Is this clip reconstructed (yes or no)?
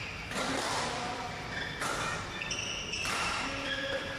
yes